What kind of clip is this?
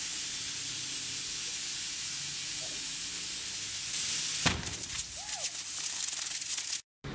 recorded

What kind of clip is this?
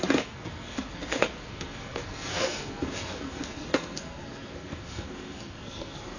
remade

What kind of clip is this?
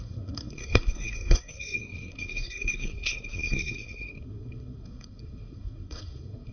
remade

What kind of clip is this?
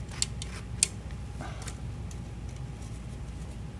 recorded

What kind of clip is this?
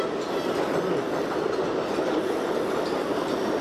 recorded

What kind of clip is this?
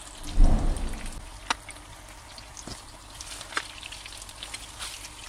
recorded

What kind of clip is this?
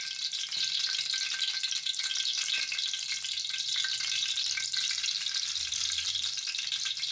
recorded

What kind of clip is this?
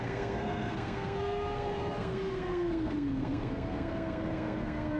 remade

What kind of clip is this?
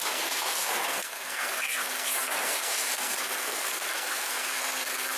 remade